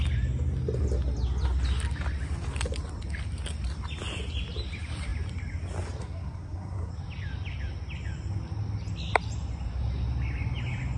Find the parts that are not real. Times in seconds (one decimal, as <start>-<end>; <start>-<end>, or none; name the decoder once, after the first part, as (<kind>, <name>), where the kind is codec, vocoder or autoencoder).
6.0-6.9 (codec, SNAC)